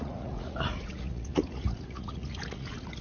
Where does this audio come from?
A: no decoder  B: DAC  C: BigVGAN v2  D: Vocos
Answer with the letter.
D